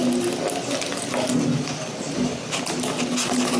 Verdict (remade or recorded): recorded